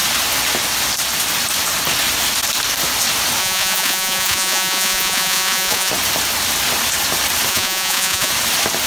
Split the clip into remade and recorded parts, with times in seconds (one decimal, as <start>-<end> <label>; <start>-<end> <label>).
0.0-3.4 recorded; 3.4-5.9 remade; 5.9-7.5 recorded; 7.5-8.3 remade; 8.3-8.9 recorded